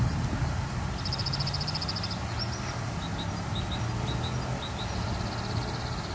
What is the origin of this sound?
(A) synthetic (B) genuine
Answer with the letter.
B